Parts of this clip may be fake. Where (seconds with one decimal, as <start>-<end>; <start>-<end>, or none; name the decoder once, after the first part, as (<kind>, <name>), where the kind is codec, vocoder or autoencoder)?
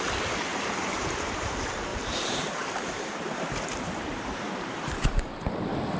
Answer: 0.5-1.5 (vocoder, BigVGAN v2); 1.9-5.1